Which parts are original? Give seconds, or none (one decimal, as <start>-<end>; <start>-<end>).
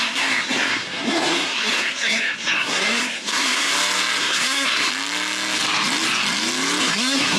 3.7-4.2; 4.9-6.8